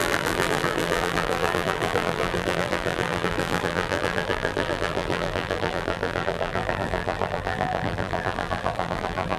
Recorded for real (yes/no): no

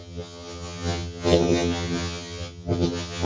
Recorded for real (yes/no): no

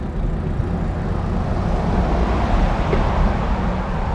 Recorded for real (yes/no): yes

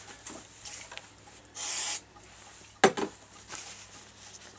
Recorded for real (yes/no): yes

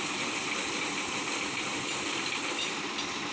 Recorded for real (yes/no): yes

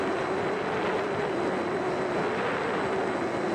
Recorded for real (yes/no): yes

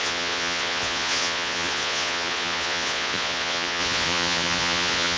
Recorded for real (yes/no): no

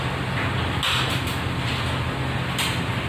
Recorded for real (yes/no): yes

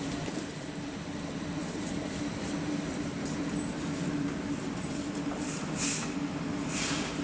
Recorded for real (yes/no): no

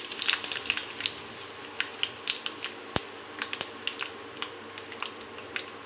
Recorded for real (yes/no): yes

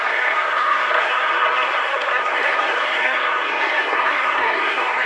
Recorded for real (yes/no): no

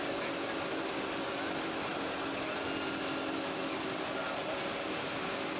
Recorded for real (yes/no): yes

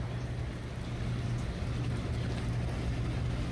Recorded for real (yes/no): yes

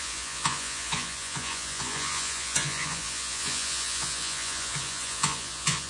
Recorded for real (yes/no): no